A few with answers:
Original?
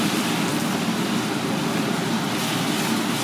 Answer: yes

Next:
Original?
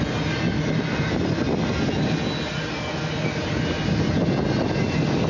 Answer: yes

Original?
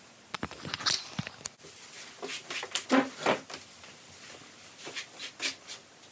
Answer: yes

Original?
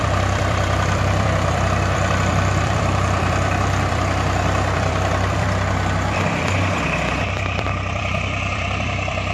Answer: no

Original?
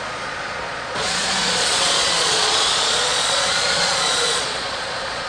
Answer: no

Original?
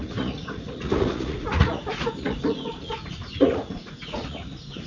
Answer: no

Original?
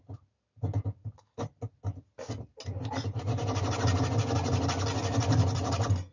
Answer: yes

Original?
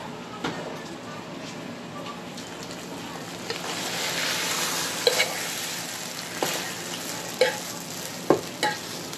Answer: yes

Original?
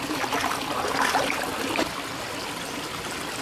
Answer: yes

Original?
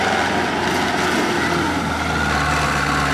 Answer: yes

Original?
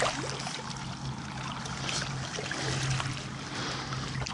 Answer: yes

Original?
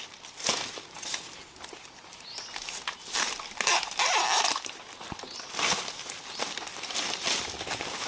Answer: yes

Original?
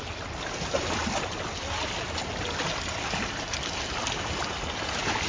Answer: yes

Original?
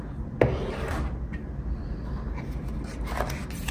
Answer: yes